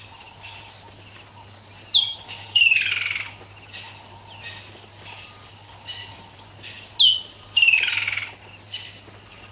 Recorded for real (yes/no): yes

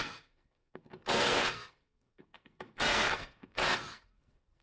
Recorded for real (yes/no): no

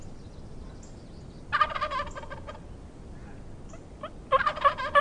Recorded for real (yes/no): yes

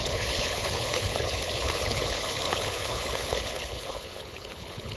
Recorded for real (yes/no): no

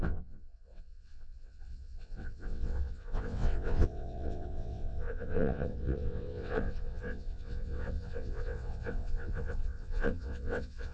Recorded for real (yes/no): no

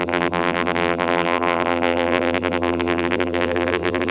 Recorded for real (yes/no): no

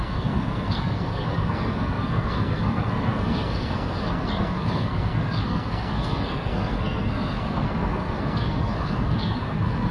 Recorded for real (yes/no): no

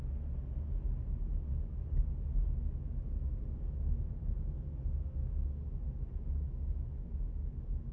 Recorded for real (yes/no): yes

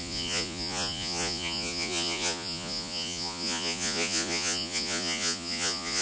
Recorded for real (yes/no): no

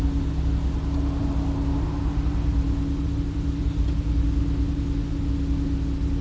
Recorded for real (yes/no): yes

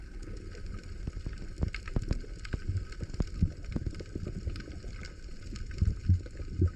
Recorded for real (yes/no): yes